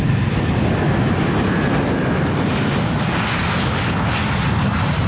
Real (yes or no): yes